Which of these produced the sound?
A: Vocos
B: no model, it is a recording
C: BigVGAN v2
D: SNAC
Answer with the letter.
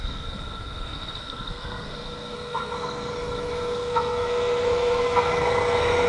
D